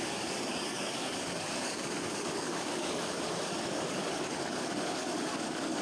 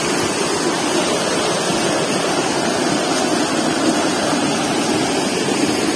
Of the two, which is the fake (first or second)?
first